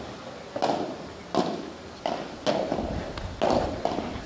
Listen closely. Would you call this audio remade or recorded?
recorded